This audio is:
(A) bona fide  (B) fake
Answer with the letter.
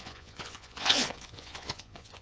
B